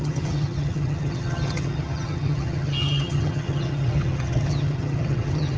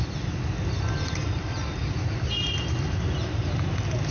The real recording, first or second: second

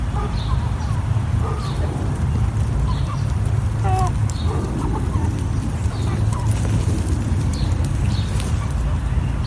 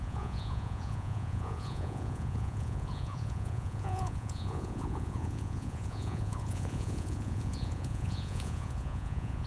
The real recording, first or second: first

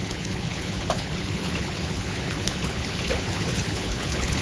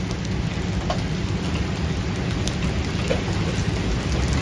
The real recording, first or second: second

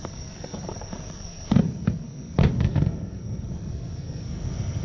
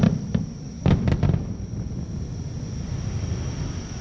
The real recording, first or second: second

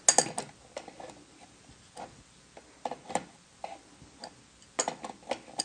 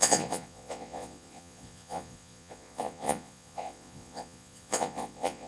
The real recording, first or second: first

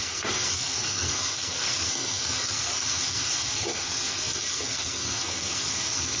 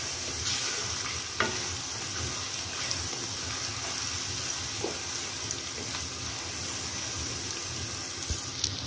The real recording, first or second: second